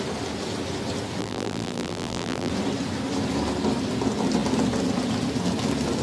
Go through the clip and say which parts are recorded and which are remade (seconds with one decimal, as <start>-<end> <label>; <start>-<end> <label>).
0.0-1.2 recorded; 1.2-2.5 remade; 2.5-6.0 recorded